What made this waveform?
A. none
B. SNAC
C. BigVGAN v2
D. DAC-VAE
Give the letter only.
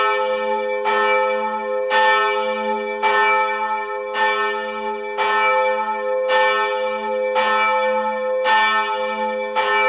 A